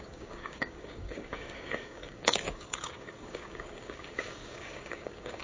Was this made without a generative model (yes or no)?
no